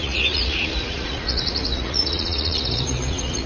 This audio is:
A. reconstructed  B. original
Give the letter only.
A